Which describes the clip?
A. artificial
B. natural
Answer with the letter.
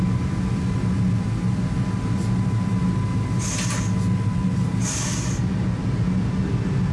B